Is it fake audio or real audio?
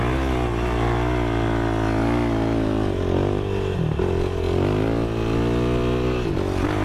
real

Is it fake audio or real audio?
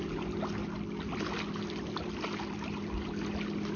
real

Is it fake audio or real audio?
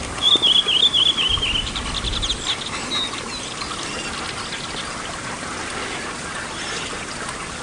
real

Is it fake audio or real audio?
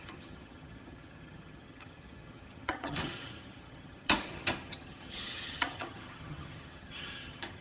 fake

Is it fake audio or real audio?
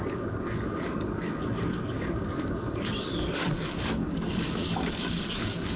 fake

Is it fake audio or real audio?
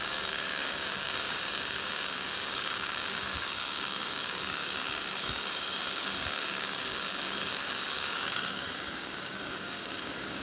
fake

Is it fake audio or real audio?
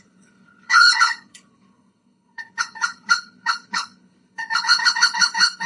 fake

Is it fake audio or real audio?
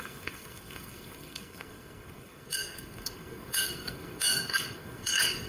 fake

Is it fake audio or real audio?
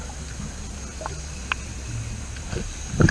real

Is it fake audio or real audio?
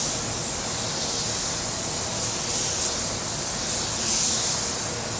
real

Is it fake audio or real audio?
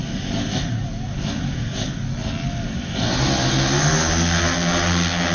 real